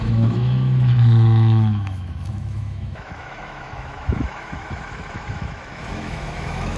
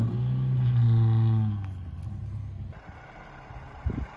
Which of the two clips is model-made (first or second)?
first